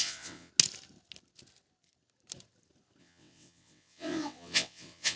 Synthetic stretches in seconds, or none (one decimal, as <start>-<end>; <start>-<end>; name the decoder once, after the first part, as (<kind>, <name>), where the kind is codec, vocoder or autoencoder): 0.0-0.5 (vocoder, WaveNeXt); 3.0-5.2